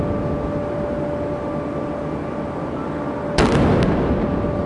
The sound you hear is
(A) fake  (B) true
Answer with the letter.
B